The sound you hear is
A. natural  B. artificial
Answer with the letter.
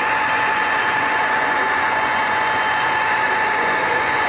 B